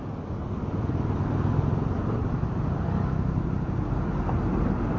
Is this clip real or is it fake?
real